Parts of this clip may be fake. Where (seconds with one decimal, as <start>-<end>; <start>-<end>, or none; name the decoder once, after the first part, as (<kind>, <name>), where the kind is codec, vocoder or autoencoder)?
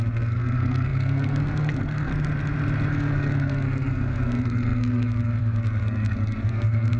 0.0-2.1 (codec, SNAC); 2.9-7.0